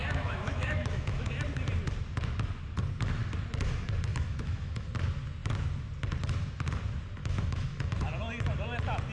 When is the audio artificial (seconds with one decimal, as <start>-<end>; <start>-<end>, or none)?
0.0-1.3; 4.1-4.9; 7.2-8.2